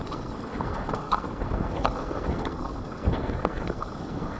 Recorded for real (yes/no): no